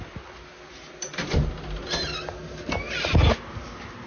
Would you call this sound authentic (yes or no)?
yes